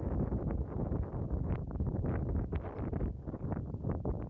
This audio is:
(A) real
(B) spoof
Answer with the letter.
A